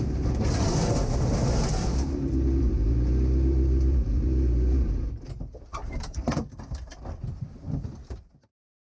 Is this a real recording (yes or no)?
yes